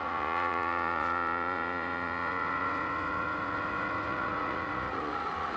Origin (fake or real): fake